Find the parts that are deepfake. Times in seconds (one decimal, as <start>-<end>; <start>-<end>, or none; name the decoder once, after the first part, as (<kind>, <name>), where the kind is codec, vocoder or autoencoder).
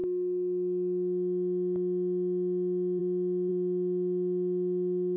none